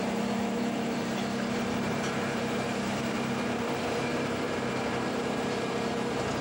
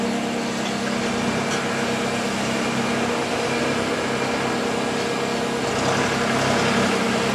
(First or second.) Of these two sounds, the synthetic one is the first